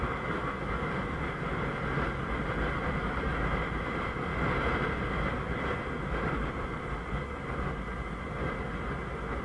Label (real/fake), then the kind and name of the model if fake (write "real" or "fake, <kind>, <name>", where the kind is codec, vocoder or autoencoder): real